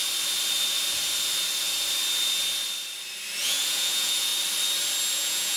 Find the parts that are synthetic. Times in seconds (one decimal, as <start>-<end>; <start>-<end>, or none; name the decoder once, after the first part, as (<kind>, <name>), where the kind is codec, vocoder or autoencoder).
3.4-4.3 (vocoder, Vocos); 5.1-5.6